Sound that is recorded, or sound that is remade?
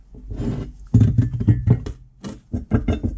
recorded